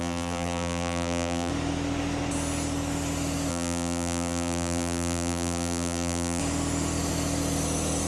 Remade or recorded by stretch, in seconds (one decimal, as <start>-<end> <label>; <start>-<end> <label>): 0.0-1.5 remade; 1.5-3.5 recorded; 3.5-6.4 remade; 6.4-8.1 recorded